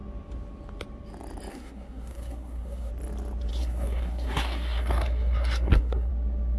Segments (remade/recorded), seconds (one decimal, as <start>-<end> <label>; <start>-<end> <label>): 0.0-1.5 recorded; 1.5-2.9 remade; 2.9-3.5 recorded; 3.5-6.1 remade; 6.1-6.6 recorded